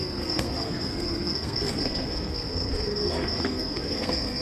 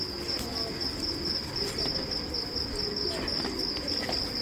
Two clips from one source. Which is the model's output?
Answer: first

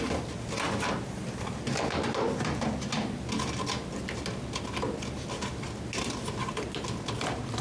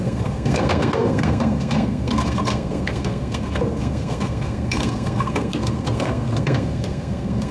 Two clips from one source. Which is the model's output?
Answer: second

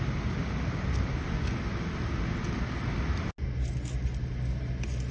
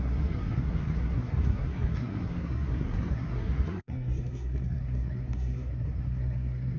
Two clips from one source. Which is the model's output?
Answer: second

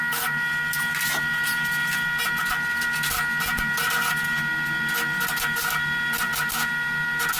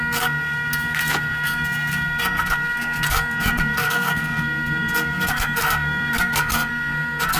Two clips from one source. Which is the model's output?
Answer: second